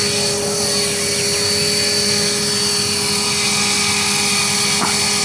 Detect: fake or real real